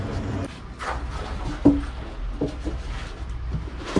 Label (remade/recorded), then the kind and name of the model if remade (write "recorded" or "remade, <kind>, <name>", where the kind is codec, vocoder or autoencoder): recorded